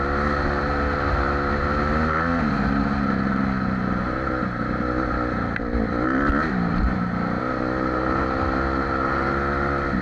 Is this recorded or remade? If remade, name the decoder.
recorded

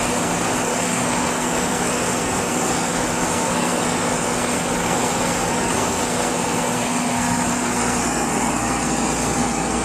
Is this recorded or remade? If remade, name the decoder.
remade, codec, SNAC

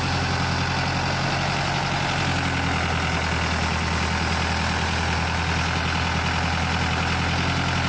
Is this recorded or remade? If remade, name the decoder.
recorded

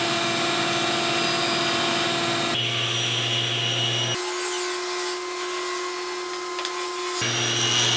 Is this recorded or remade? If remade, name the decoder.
recorded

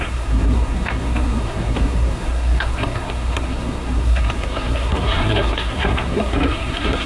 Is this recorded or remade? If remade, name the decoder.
remade, codec, SNAC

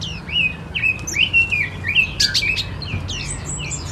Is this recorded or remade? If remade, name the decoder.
recorded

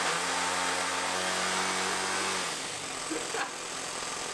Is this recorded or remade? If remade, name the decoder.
recorded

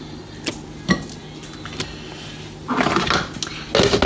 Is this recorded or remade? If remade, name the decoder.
recorded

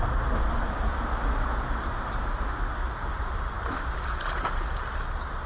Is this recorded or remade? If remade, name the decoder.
recorded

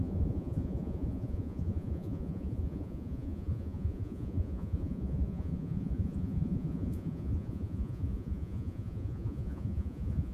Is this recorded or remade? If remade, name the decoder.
remade, vocoder, Vocos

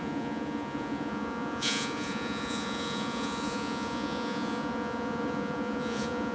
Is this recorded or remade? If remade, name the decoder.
remade, vocoder, Vocos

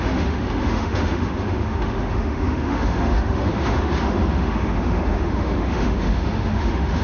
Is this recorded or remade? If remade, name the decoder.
remade, autoencoder, DAC-VAE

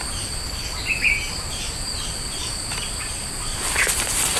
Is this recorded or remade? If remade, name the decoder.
recorded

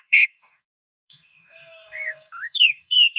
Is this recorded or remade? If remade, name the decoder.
remade, codec, DAC